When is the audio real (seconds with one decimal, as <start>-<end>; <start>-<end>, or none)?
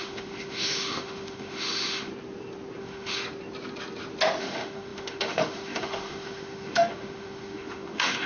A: 2.1-2.8; 3.2-4.4